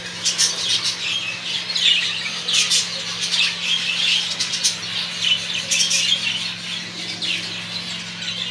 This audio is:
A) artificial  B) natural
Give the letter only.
B